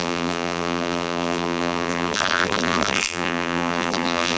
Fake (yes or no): yes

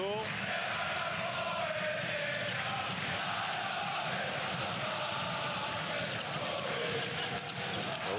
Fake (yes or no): no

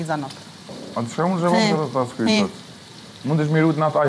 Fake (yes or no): yes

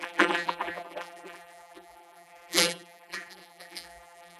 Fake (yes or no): yes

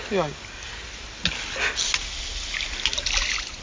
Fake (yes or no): no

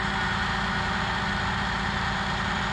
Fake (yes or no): yes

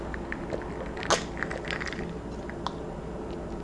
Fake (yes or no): no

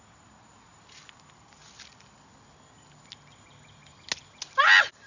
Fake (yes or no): no